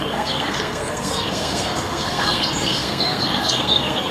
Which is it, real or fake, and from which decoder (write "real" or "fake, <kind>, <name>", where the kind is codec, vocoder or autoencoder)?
fake, codec, SNAC